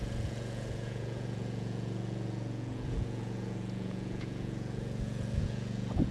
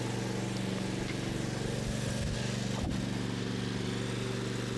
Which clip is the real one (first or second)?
second